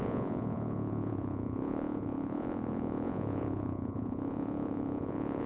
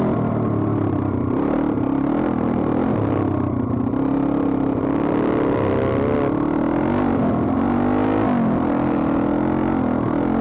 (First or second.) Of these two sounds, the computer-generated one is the first